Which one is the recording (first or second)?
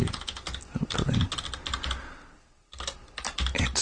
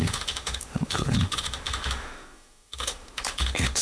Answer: first